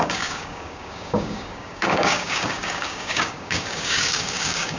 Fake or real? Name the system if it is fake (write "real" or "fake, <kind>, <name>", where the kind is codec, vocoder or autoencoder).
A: fake, codec, DAC